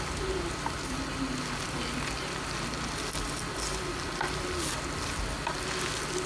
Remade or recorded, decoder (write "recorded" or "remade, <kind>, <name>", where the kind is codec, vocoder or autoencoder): recorded